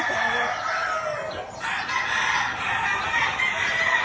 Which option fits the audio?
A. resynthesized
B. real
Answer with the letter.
B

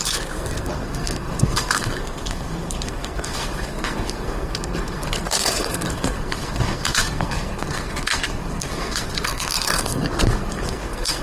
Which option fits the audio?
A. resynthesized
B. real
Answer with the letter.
A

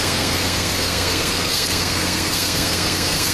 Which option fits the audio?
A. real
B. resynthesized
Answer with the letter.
B